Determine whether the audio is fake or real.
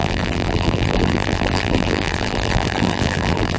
fake